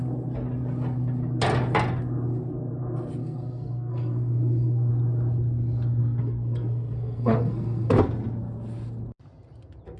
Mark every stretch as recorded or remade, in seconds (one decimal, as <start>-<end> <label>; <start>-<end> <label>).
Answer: 0.0-3.2 recorded; 3.2-4.9 remade; 4.9-6.0 recorded; 6.0-7.9 remade; 7.9-10.0 recorded